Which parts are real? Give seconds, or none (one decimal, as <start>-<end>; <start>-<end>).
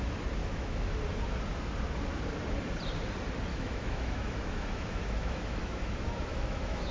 0.0-0.4; 0.9-3.5